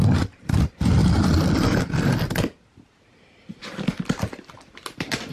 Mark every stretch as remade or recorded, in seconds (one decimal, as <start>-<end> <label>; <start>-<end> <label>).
0.0-5.3 recorded